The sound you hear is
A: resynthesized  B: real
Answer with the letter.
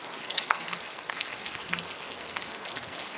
A